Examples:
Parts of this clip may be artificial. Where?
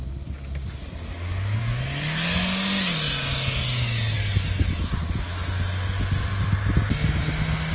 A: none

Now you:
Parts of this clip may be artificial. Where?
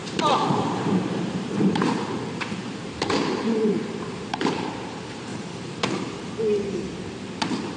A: 0.0-4.7 (vocoder, BigVGAN v2); 5.3-6.3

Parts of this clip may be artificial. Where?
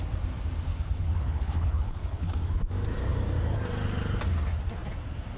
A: 0.7-2.3 (codec, HILCodec)